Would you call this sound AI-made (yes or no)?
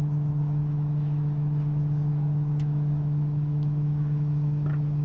yes